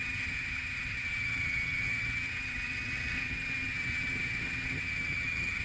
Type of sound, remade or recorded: remade